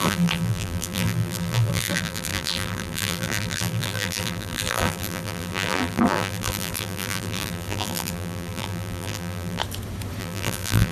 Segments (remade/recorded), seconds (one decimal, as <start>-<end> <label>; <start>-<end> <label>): 0.0-9.6 remade; 9.6-10.2 recorded; 10.2-10.9 remade